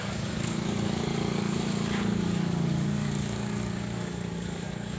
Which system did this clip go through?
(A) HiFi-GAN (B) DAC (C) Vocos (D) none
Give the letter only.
B